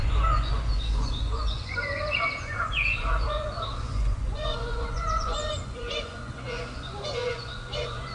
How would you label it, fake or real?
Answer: fake